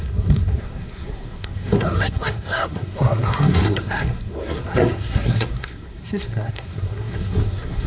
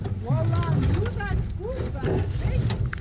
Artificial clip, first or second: first